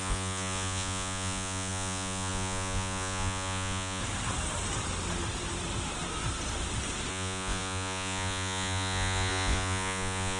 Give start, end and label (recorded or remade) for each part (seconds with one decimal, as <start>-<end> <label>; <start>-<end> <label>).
0.0-4.0 remade; 4.0-7.1 recorded; 7.1-10.4 remade